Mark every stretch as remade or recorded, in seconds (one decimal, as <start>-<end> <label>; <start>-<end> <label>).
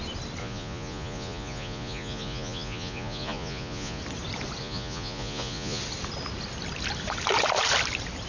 0.0-0.4 recorded; 0.4-4.0 remade; 4.0-4.6 recorded; 4.6-5.8 remade; 5.8-8.3 recorded